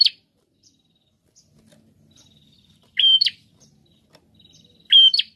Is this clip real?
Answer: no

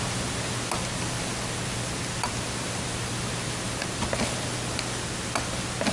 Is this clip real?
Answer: yes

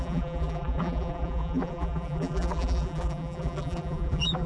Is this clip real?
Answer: no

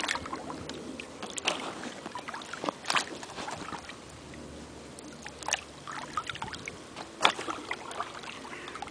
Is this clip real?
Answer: yes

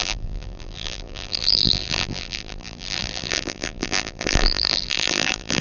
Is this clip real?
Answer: no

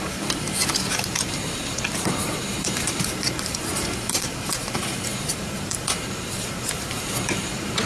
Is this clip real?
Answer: no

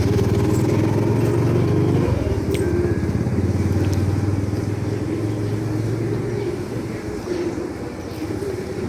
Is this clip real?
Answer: yes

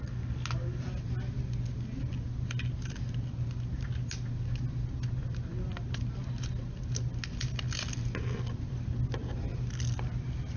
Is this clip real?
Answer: yes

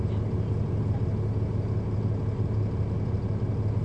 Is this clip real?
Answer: yes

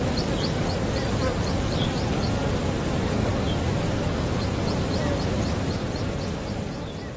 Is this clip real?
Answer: yes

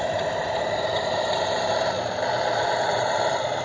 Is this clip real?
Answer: no